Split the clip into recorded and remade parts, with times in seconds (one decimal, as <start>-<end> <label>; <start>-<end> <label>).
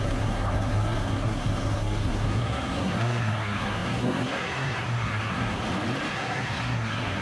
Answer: 0.0-5.6 remade; 5.6-6.1 recorded; 6.1-7.2 remade